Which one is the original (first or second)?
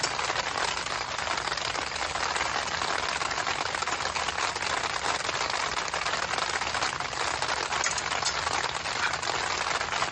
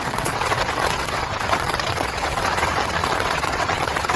first